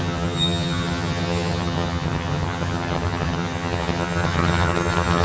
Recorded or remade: remade